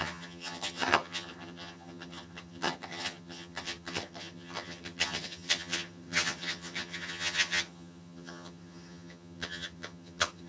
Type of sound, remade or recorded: remade